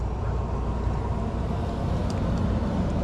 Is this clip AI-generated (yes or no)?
no